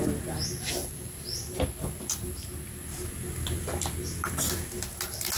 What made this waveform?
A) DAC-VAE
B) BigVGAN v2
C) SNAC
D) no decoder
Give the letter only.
D